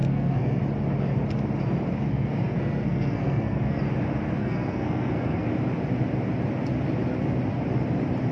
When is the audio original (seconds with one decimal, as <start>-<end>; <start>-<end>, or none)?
0.6-2.1; 3.8-4.4; 5.5-8.3